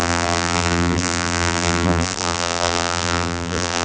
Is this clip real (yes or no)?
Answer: no